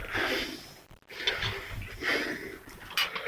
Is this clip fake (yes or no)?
no